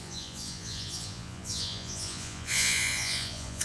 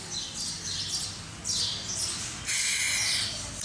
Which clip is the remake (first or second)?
first